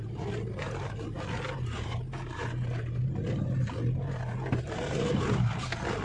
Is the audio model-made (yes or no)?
no